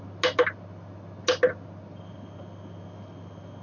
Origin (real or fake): real